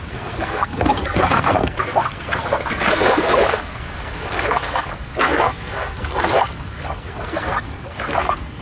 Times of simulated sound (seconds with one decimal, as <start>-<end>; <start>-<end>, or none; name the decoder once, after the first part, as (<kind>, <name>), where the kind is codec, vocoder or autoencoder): 0.0-8.6 (codec, SNAC)